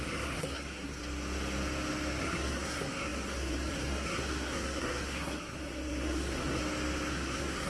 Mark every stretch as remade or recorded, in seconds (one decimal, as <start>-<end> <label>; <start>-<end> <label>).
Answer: 0.0-1.0 remade; 1.0-2.2 recorded; 2.2-6.6 remade; 6.6-7.1 recorded; 7.1-7.7 remade

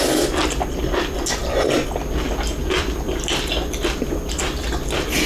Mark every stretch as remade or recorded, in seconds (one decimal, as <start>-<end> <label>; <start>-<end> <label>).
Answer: 0.0-5.3 recorded

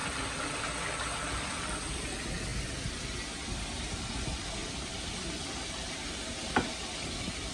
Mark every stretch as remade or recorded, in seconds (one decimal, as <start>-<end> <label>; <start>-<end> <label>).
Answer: 0.0-7.5 recorded

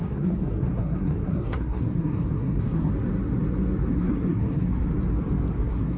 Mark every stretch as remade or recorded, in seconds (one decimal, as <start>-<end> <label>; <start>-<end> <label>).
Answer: 0.0-2.9 remade; 2.9-3.9 recorded; 3.9-4.9 remade; 4.9-5.6 recorded; 5.6-6.0 remade

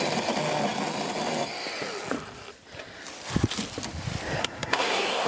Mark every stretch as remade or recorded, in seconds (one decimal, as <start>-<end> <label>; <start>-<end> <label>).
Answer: 0.0-4.4 recorded; 4.4-5.3 remade

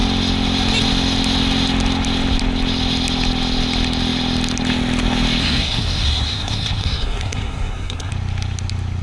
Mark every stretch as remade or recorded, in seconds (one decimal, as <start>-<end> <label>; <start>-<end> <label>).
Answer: 0.0-5.4 recorded; 5.4-8.1 remade; 8.1-9.0 recorded

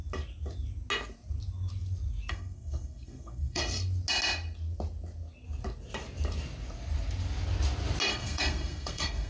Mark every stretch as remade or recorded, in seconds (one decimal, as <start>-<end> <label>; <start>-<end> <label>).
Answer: 0.0-2.3 recorded; 2.3-3.6 remade; 3.6-8.1 recorded; 8.1-9.3 remade